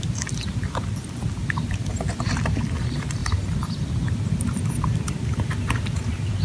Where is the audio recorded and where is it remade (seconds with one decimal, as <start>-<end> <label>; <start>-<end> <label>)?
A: 0.0-6.4 recorded